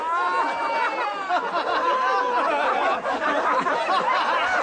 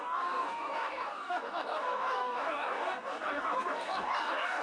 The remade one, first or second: second